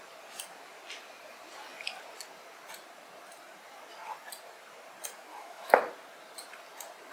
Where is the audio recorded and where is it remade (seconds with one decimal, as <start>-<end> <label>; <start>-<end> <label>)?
0.0-5.3 recorded; 5.3-5.8 remade; 5.8-7.1 recorded